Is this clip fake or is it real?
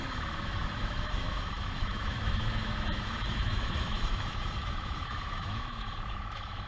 fake